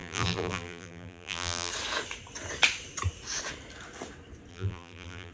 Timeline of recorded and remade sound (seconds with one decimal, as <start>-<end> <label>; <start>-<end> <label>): 0.0-1.7 remade; 1.7-4.5 recorded; 4.5-5.3 remade